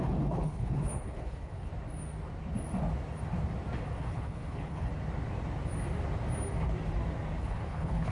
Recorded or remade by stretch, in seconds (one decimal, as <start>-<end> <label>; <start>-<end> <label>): 0.0-1.7 remade; 1.7-4.0 recorded; 4.0-4.9 remade; 4.9-7.4 recorded; 7.4-8.1 remade